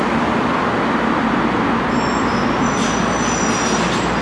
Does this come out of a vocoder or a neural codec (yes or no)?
no